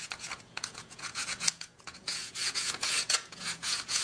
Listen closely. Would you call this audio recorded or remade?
remade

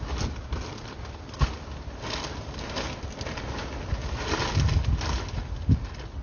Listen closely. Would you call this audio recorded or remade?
recorded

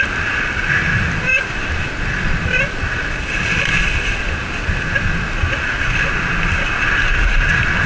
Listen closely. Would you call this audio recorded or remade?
recorded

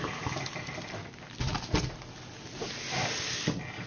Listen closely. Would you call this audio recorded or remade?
recorded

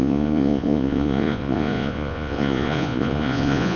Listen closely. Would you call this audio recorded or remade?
remade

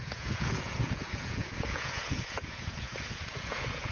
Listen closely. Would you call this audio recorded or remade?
remade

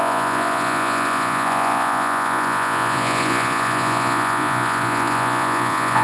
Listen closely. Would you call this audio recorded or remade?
remade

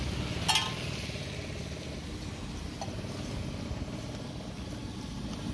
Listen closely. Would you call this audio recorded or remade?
recorded